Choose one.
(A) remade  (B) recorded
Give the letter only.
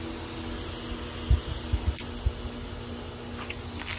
B